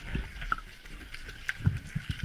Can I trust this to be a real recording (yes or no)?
yes